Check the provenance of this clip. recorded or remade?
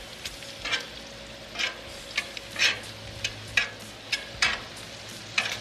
recorded